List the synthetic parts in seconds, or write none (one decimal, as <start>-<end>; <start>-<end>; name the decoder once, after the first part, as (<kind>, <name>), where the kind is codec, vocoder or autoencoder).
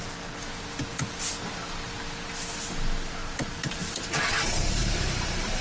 3.2-3.8 (vocoder, BigVGAN v2); 4.8-5.6